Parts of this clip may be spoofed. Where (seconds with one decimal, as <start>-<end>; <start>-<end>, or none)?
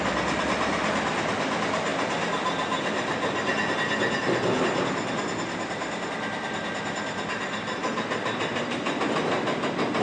none